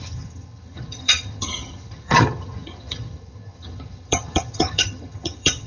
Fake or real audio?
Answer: fake